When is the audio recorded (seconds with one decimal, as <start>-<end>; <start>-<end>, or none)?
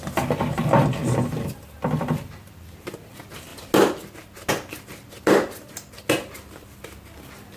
0.0-7.6